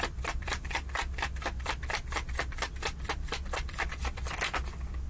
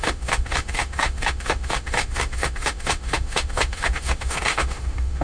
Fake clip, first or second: second